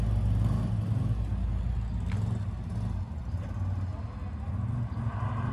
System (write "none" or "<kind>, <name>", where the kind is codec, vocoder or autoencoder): none